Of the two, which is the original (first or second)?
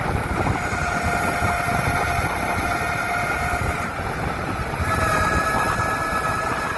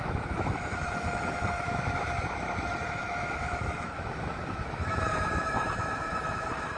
first